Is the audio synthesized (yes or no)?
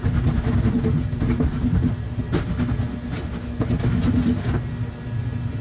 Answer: no